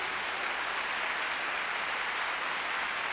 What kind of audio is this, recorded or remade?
recorded